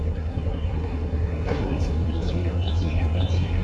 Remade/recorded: remade